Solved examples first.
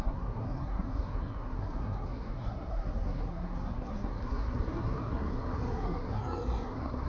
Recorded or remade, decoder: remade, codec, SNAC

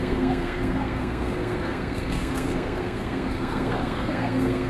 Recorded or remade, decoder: remade, codec, SNAC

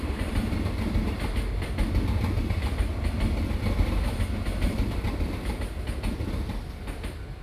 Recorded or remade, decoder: recorded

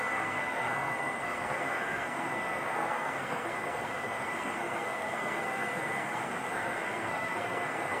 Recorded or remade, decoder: remade, codec, SNAC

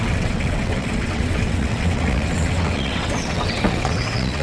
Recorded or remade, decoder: remade, vocoder, WaveNeXt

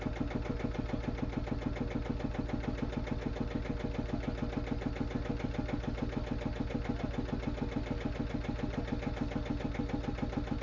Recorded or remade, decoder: recorded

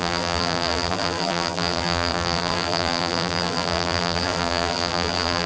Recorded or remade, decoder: remade, vocoder, BigVGAN v2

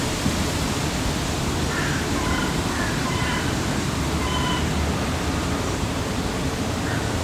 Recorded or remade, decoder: recorded